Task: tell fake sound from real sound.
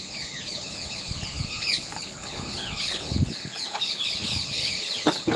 fake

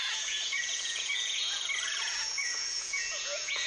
fake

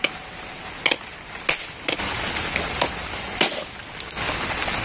real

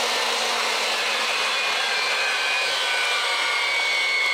real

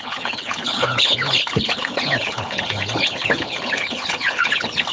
fake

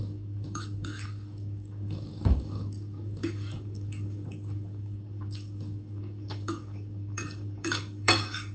fake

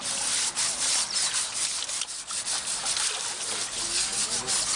real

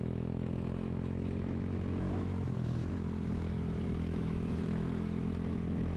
fake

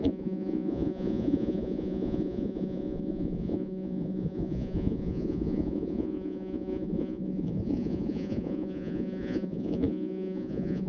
fake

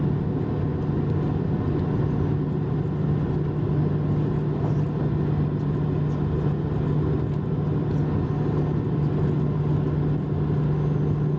real